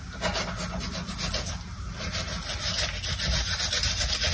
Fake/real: real